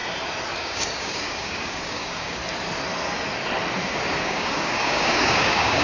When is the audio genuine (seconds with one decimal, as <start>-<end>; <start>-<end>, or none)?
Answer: 0.0-0.6; 2.4-4.1